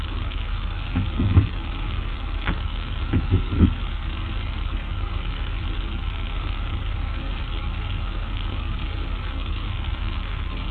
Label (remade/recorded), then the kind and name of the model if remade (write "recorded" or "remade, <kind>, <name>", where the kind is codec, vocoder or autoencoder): remade, codec, SNAC